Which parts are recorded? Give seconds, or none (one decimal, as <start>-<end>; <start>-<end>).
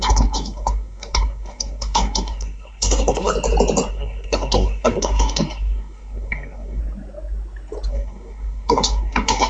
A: 3.3-3.9; 6.8-7.9